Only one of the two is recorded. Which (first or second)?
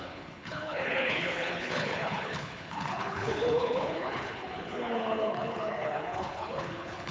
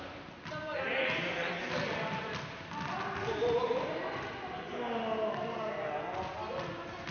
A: second